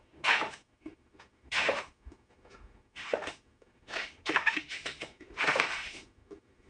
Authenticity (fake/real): fake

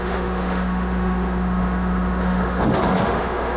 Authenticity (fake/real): fake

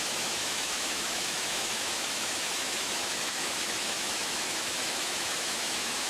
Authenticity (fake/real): fake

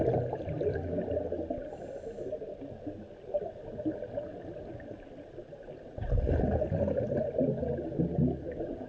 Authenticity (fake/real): real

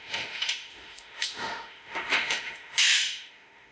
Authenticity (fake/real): fake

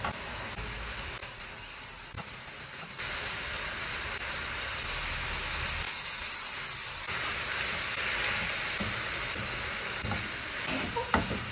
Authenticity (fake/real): real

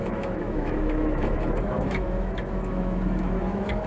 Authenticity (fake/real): fake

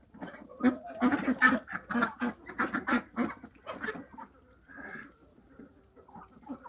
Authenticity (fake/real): real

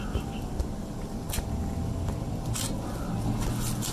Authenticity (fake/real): real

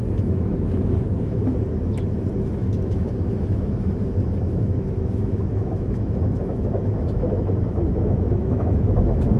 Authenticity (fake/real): fake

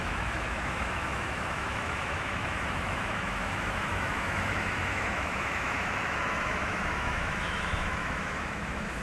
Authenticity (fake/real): fake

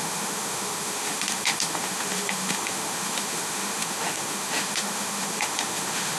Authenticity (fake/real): fake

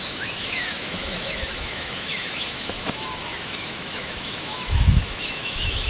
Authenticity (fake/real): fake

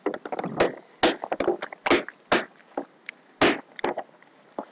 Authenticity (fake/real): real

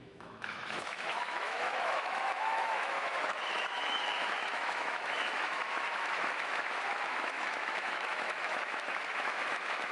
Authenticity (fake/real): fake